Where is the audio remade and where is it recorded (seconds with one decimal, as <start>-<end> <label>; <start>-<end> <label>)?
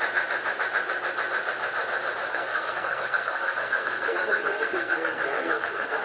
0.0-2.3 recorded; 2.3-6.0 remade